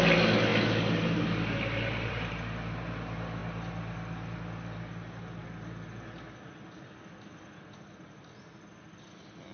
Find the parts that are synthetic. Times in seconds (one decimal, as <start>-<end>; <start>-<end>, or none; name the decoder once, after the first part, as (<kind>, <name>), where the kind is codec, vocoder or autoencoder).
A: none